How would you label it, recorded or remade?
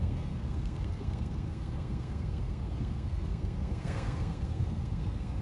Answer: remade